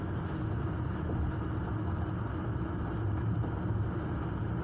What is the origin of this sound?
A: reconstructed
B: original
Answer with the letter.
B